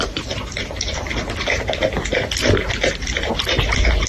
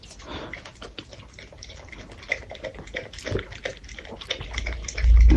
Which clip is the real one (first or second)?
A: second